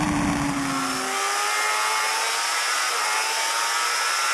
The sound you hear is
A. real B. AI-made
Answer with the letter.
A